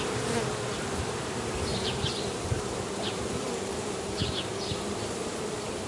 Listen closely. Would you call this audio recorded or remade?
remade